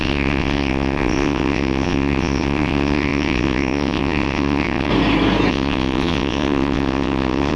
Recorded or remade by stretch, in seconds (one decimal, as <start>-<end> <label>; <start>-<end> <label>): 0.0-4.9 remade; 4.9-5.5 recorded; 5.5-7.6 remade